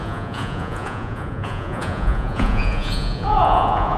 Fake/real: fake